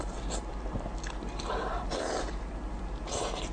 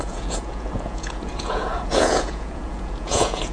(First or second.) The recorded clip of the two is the first